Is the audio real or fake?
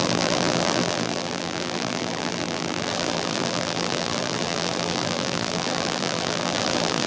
fake